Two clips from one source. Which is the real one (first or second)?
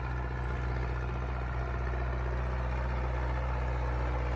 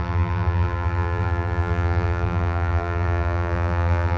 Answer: first